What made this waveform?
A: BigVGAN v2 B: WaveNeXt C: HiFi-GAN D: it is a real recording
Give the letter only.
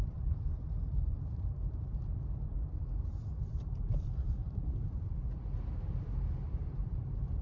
A